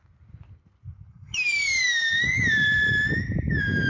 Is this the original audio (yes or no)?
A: yes